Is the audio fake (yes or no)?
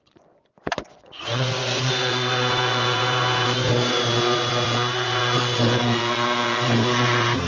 yes